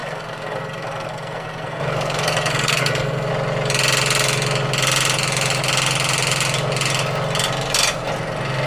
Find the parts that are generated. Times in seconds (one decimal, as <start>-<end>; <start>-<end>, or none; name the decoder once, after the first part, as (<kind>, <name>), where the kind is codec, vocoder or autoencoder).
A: 0.0-3.3 (codec, SNAC)